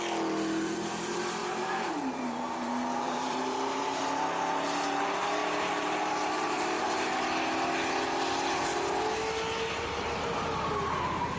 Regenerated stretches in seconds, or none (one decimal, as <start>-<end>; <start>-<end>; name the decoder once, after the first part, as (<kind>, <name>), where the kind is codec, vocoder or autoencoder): 1.4-4.0 (vocoder, BigVGAN v2); 5.4-7.1